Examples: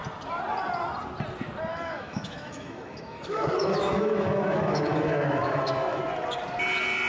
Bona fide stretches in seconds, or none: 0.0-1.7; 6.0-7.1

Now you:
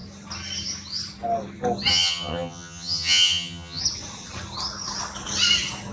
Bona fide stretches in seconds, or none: 0.0-1.9; 3.8-5.9

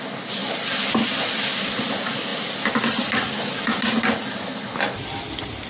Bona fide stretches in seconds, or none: 0.0-0.4; 1.1-2.3; 3.4-5.7

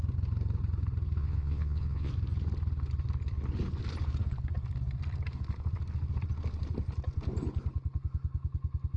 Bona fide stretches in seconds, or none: 0.0-1.2; 2.1-9.0